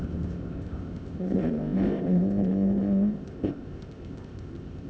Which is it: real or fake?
fake